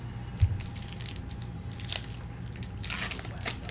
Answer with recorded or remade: recorded